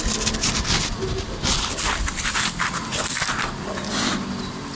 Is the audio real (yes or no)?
yes